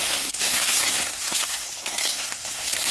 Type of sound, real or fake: fake